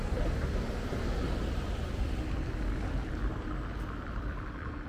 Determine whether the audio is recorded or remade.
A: recorded